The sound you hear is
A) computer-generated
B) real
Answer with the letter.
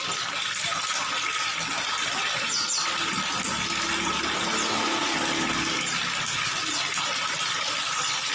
B